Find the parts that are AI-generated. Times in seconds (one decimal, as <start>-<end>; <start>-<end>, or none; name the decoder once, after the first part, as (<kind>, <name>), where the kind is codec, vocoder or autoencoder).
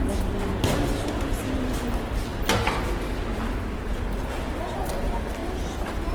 none